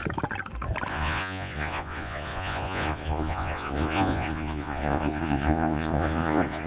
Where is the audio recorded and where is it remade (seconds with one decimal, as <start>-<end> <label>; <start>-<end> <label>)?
0.0-0.9 recorded; 0.9-6.7 remade